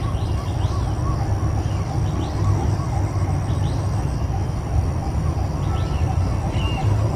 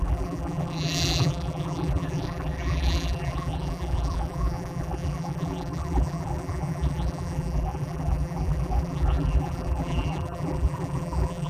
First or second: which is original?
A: first